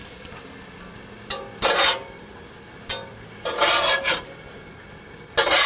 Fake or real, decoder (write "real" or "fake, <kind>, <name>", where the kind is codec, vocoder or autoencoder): real